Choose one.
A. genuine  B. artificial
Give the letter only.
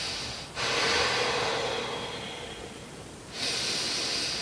A